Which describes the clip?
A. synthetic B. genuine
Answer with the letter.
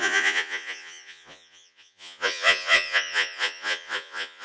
A